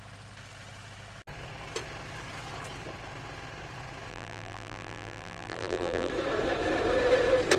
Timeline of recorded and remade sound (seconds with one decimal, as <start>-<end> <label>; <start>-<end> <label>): 0.0-4.1 recorded; 4.1-6.1 remade; 6.1-7.6 recorded